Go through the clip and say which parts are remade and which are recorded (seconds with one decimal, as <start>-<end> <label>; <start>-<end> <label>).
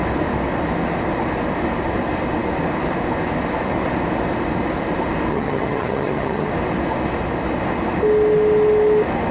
0.0-5.3 recorded; 5.3-6.5 remade; 6.5-9.3 recorded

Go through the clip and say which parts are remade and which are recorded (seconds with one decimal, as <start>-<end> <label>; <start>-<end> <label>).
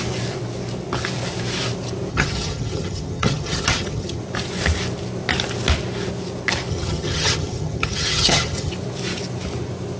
0.0-2.1 recorded; 2.1-4.2 remade; 4.2-6.7 recorded; 6.7-8.7 remade; 8.7-10.0 recorded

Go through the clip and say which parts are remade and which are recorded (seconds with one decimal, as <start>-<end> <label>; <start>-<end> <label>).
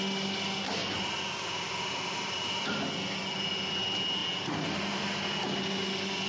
0.0-6.3 recorded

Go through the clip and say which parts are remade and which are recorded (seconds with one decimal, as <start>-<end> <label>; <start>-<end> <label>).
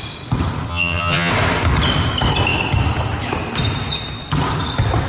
0.0-0.7 recorded; 0.7-1.3 remade; 1.3-5.1 recorded